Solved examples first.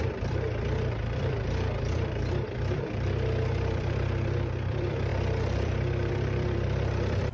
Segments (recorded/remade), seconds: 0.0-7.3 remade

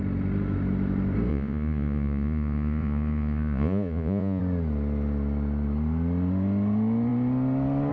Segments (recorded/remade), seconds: 0.0-1.3 recorded; 1.3-4.4 remade; 4.4-7.9 recorded

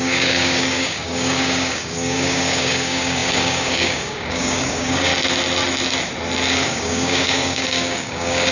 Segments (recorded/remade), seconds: 0.0-5.1 remade; 5.1-6.5 recorded; 6.5-8.5 remade